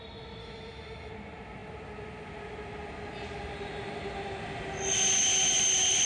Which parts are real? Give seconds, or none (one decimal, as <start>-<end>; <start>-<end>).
0.0-0.4; 1.1-6.1